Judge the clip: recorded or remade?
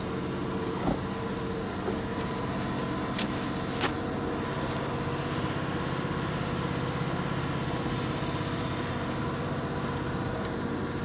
recorded